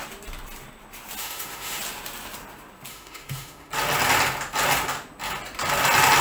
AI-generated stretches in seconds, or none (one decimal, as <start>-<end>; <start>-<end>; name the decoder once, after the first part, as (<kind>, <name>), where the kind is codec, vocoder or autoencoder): 1.2-1.8 (autoencoder, DAC-VAE); 2.9-3.7